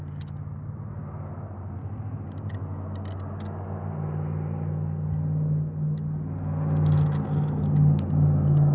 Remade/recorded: recorded